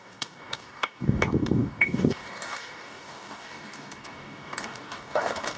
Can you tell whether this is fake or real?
fake